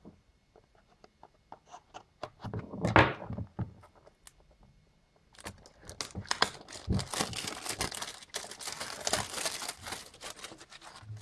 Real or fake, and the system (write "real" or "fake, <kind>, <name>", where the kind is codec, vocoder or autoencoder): real